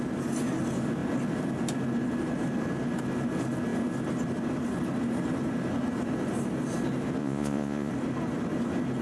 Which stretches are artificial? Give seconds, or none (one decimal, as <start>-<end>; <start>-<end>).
7.2-7.9